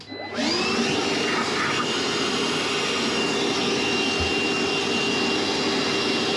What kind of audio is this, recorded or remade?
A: recorded